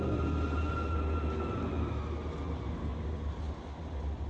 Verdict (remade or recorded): recorded